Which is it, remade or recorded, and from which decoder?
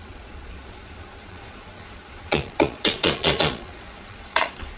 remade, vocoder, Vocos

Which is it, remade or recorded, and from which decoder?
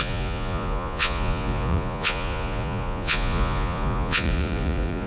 remade, vocoder, Vocos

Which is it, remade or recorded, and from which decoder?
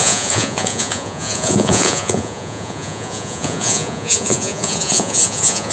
remade, vocoder, Vocos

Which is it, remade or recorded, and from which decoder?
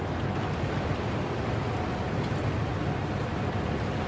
recorded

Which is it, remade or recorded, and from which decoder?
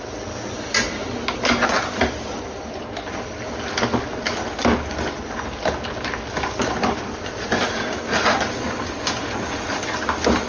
recorded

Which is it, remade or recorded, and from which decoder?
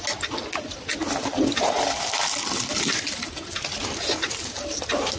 recorded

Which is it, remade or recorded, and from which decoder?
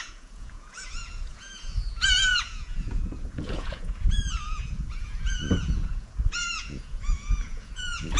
remade, vocoder, Vocos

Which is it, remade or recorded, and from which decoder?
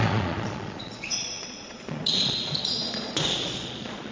remade, vocoder, Vocos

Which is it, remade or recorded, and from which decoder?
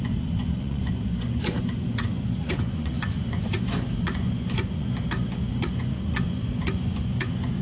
remade, vocoder, Vocos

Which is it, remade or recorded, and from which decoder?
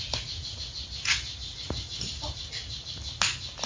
recorded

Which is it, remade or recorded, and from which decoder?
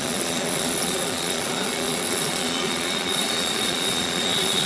remade, vocoder, Vocos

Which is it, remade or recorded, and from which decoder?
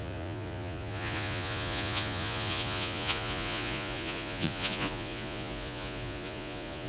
remade, vocoder, Vocos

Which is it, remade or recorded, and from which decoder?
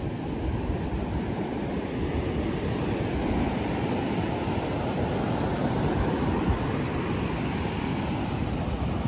recorded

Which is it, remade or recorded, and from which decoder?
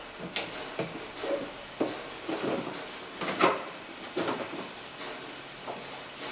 recorded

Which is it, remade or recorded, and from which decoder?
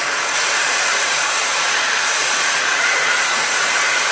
remade, vocoder, Vocos